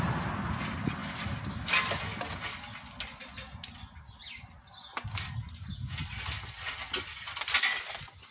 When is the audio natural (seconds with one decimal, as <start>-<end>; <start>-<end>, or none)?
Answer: 0.0-8.3